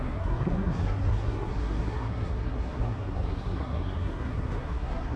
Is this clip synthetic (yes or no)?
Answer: yes